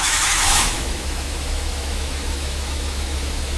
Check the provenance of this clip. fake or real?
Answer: fake